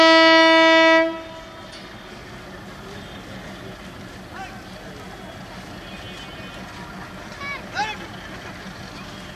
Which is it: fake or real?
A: real